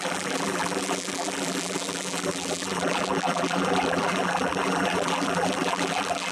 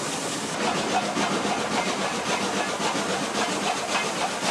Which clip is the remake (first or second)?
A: first